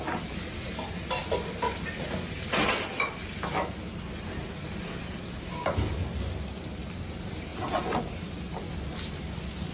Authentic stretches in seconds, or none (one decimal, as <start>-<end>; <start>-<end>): 0.0-9.7